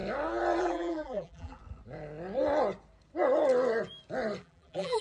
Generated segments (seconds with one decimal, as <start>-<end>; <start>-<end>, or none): 0.6-1.6; 4.4-5.0